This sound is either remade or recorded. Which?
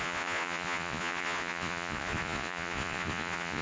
remade